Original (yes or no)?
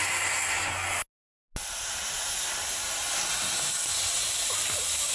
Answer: yes